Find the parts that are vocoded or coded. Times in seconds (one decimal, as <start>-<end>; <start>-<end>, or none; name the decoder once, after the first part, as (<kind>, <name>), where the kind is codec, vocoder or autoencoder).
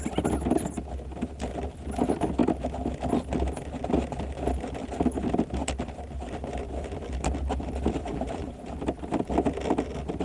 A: 8.0-8.5 (vocoder, Vocos)